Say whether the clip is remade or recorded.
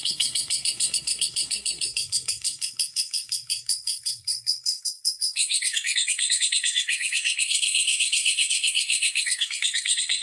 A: remade